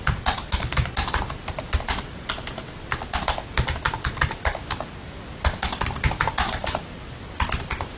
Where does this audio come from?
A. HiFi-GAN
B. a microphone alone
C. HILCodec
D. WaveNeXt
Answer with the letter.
B